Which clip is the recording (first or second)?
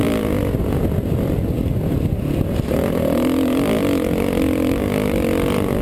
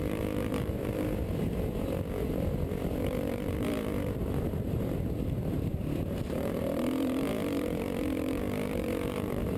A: first